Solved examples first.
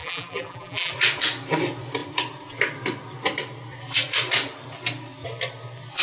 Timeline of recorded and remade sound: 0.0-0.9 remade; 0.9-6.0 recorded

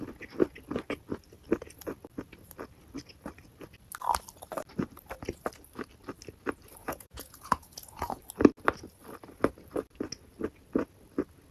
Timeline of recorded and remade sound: 0.0-6.8 recorded; 6.8-8.2 remade; 8.2-11.5 recorded

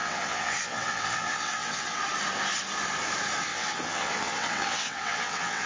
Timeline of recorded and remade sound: 0.0-2.0 remade; 2.0-3.5 recorded; 3.5-5.7 remade

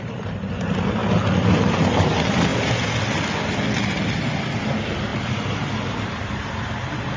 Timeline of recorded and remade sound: 0.0-1.0 remade; 1.0-1.5 recorded; 1.5-2.5 remade; 2.5-4.2 recorded; 4.2-7.2 remade

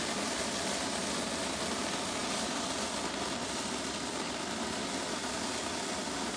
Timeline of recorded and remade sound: 0.0-6.4 recorded

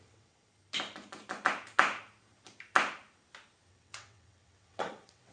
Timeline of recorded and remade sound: 0.0-0.5 remade; 0.5-3.7 recorded; 3.7-5.3 remade